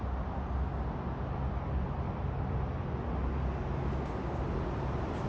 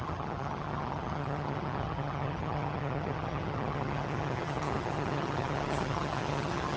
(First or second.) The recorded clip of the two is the first